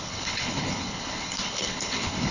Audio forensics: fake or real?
fake